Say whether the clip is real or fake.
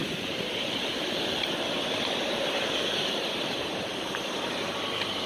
fake